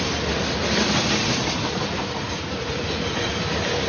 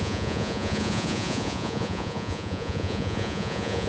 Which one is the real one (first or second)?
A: first